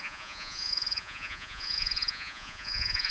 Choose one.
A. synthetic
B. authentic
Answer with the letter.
A